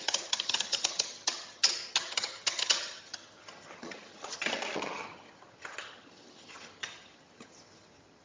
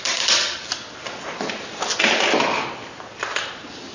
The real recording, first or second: second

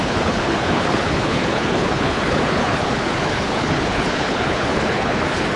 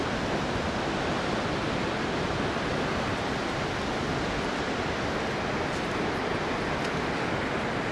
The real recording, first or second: second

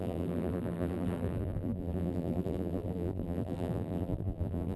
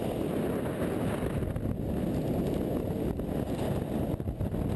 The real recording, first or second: second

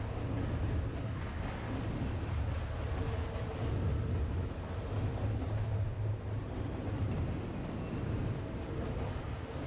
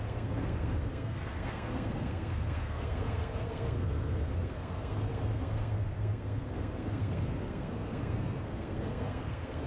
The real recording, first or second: first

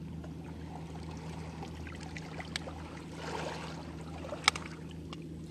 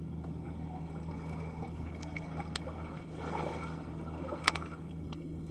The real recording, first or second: first